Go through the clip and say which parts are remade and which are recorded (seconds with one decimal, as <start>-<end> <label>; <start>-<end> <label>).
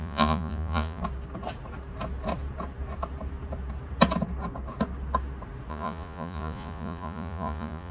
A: 0.0-1.0 remade; 1.0-5.7 recorded; 5.7-7.9 remade